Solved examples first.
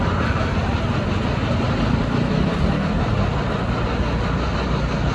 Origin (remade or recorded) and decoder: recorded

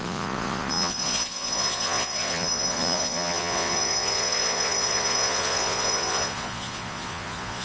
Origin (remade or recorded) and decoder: remade, vocoder, Vocos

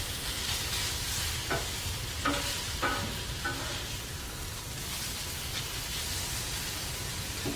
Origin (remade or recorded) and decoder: recorded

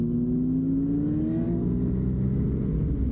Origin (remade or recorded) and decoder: recorded